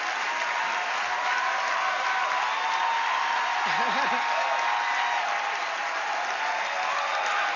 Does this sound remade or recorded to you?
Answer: recorded